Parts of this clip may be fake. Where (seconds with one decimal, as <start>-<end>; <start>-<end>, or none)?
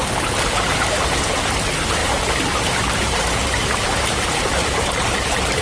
0.7-1.4; 2.0-5.6